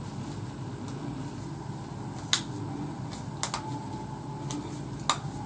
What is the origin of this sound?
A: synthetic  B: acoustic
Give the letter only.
B